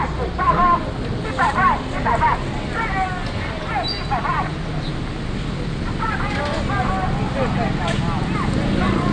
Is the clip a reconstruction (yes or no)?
no